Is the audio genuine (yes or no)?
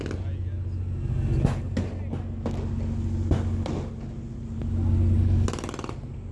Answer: yes